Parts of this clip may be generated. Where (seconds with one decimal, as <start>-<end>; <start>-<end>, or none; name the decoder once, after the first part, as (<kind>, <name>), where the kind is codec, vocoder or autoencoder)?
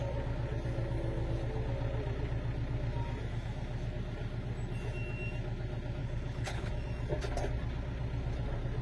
6.0-6.7 (codec, HILCodec)